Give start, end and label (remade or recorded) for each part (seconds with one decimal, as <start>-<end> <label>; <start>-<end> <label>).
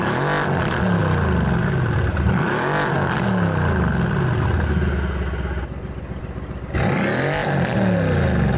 0.0-8.6 recorded